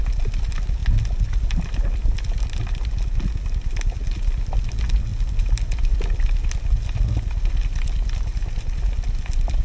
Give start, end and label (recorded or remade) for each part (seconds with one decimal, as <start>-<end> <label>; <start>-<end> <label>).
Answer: 0.0-9.6 recorded